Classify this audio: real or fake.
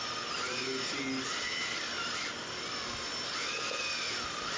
real